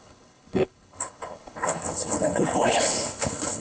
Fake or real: fake